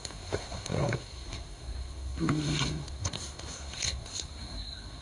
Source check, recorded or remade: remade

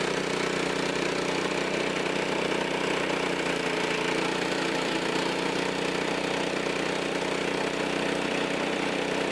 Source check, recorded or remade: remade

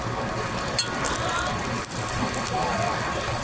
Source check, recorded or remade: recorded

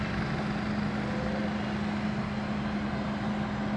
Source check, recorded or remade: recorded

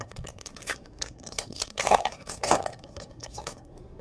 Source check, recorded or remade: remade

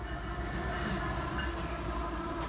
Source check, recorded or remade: recorded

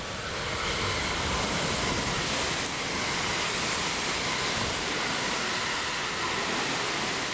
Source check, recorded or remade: recorded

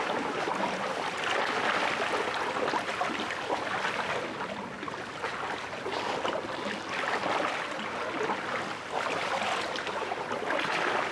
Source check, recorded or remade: recorded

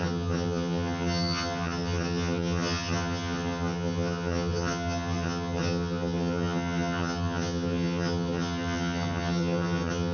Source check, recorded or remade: remade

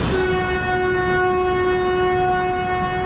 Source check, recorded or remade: recorded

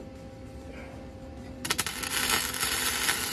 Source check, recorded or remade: recorded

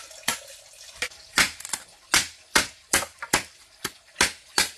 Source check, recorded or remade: recorded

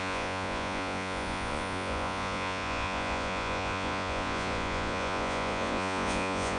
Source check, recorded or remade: remade